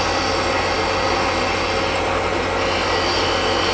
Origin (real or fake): real